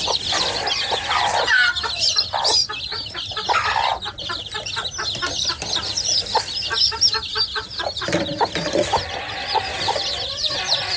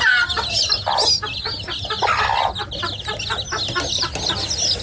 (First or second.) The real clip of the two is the second